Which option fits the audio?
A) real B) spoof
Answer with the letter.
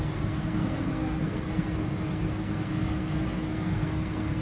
B